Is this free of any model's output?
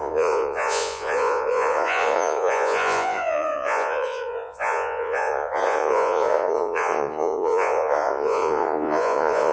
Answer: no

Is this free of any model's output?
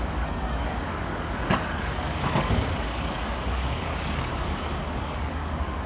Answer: no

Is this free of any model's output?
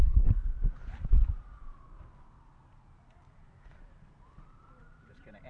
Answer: no